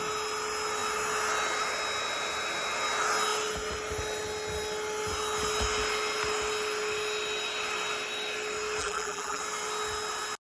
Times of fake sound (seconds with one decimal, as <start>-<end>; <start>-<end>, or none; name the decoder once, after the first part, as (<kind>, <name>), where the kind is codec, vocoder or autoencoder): 8.8-9.4 (vocoder, BigVGAN v2)